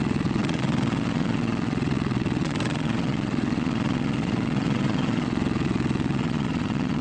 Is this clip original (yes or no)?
no